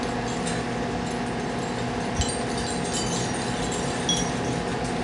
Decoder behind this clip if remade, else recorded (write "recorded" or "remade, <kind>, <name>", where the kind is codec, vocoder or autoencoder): recorded